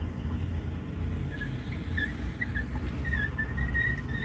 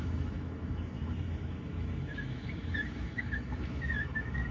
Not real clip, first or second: second